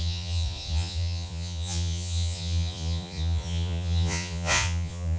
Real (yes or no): no